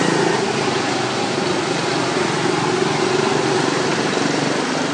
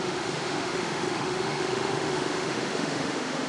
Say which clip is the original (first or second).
first